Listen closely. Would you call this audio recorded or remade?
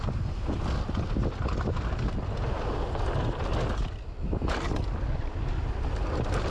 recorded